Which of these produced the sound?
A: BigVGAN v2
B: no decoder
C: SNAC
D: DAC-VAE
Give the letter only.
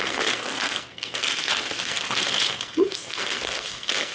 C